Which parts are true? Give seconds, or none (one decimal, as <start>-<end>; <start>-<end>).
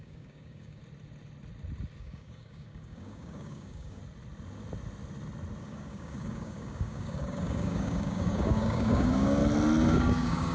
0.8-2.0; 4.0-5.6; 9.4-9.9